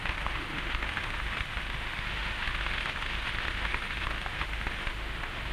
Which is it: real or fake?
fake